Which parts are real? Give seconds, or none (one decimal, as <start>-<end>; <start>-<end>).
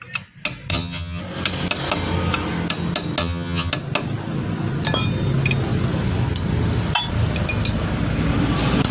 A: 0.0-0.7; 1.2-3.2; 3.7-8.9